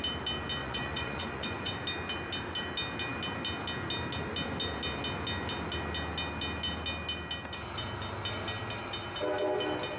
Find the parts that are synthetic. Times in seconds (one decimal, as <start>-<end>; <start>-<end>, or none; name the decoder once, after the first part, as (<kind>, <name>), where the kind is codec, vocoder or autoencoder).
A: 0.6-1.8 (vocoder, Vocos)